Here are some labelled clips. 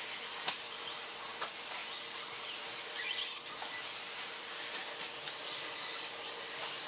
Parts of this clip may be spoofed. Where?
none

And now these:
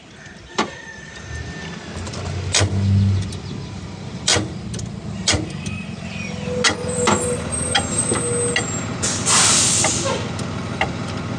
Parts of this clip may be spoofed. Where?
none

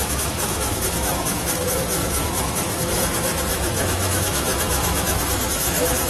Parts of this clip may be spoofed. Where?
0.0-6.1 (autoencoder, DAC-VAE)

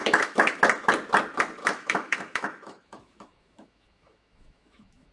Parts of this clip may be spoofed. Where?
0.0-0.6 (autoencoder, DAC-VAE); 1.6-5.1

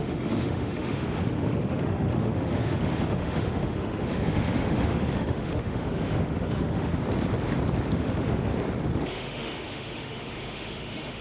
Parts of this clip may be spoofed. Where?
0.0-6.9 (autoencoder, DAC-VAE); 8.0-8.5; 9.1-11.2

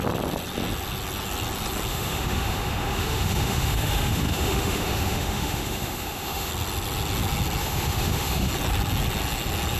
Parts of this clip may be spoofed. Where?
1.9-6.5 (autoencoder, DAC-VAE); 7.6-8.5

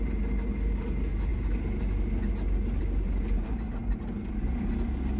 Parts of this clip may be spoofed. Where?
none

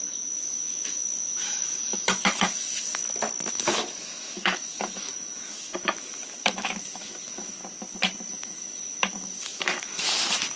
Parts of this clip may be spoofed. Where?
0.0-3.0 (autoencoder, DAC-VAE); 3.5-7.6; 8.3-10.6